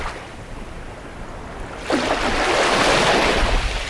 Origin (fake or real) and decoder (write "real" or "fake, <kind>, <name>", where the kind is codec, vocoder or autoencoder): real